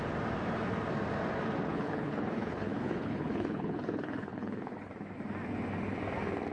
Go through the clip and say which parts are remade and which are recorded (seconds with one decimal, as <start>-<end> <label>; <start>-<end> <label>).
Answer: 0.0-1.7 recorded; 1.7-4.9 remade; 4.9-6.5 recorded